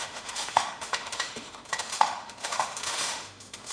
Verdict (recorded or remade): remade